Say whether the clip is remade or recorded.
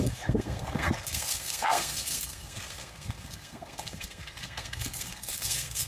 remade